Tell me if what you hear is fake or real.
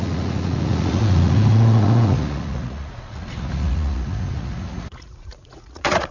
fake